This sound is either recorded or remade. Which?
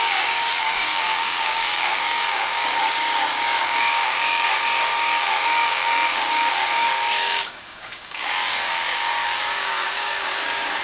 remade